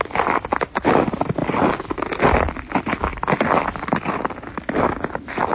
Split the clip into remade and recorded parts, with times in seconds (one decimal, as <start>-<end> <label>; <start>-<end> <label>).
0.0-5.5 recorded